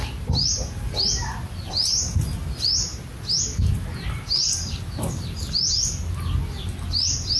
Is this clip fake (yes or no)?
no